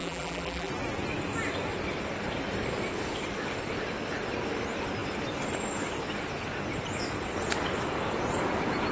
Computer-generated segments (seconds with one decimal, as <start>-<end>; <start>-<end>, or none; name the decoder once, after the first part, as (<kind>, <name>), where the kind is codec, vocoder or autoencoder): 0.0-0.7 (vocoder, BigVGAN v2)